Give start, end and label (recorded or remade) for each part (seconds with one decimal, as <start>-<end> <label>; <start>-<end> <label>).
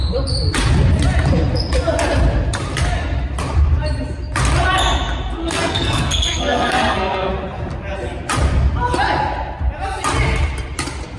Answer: 0.0-5.4 recorded; 5.4-7.3 remade; 7.3-11.2 recorded